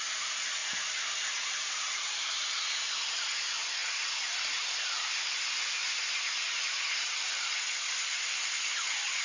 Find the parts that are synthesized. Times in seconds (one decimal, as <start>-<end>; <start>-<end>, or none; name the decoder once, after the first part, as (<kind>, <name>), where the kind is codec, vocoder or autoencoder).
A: 0.6-3.1 (vocoder, BigVGAN v2)